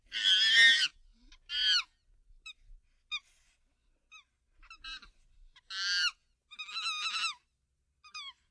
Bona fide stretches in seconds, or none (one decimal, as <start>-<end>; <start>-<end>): 0.0-8.5